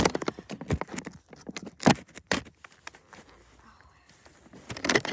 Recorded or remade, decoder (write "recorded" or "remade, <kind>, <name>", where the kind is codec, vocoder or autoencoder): recorded